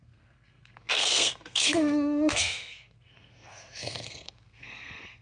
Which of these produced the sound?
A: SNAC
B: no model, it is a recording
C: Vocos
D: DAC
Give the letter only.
A